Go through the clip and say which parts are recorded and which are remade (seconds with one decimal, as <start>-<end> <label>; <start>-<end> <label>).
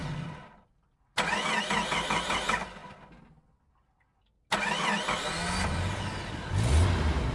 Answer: 0.0-7.3 recorded